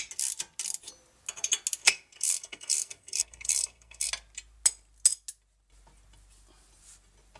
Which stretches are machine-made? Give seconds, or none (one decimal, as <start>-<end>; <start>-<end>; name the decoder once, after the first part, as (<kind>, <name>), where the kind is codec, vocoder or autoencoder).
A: 1.8-4.1 (codec, SNAC)

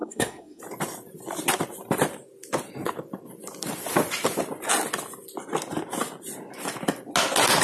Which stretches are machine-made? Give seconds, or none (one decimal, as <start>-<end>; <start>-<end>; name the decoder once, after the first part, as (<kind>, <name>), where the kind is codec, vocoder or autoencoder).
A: 0.0-0.6 (codec, SNAC)

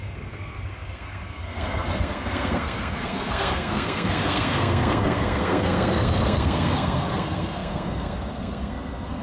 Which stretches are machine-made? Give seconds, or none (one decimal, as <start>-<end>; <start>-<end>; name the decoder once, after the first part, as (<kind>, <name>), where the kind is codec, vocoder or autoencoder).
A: 0.0-9.2 (codec, SNAC)

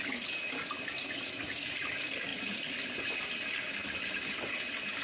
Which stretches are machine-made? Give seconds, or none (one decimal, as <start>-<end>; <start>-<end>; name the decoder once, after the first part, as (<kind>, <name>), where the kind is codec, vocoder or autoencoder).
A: none

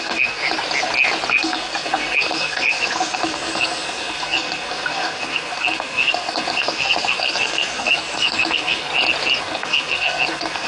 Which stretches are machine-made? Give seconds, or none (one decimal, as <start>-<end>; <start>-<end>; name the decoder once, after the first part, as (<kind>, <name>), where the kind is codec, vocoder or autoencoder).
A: 0.0-0.4 (codec, SNAC); 1.3-8.9; 9.4-10.7

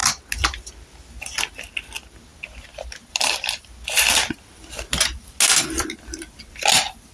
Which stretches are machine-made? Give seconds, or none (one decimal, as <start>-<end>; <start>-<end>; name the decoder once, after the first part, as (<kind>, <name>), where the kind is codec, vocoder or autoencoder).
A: none